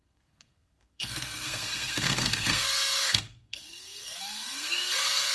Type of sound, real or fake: fake